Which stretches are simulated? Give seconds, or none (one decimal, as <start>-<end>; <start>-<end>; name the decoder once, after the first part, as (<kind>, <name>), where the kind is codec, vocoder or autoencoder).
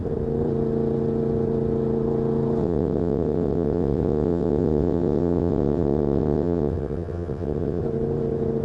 2.6-7.8 (vocoder, WaveNeXt)